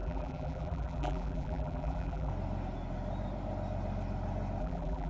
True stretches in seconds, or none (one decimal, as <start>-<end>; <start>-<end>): 2.3-4.6